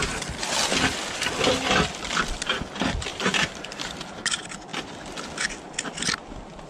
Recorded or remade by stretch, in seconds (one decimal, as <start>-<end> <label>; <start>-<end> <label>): 0.0-3.1 recorded; 3.1-4.0 remade; 4.0-6.7 recorded